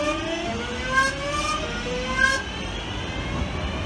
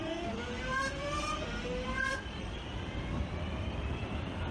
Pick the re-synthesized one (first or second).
second